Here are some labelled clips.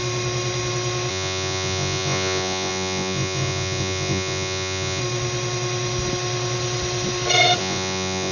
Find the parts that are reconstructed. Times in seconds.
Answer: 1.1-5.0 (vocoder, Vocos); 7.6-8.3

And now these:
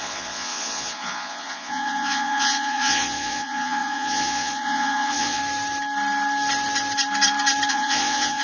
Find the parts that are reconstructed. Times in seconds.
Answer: 0.0-5.4 (vocoder, Vocos); 7.7-8.4

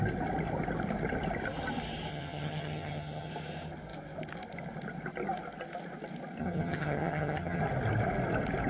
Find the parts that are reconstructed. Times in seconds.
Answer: 2.1-3.3 (vocoder, HiFi-GAN); 6.4-7.6

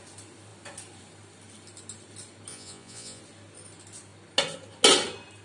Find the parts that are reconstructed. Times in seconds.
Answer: 2.5-3.2 (vocoder, Vocos)

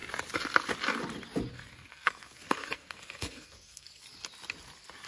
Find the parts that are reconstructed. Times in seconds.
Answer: 1.5-4.0 (codec, SNAC)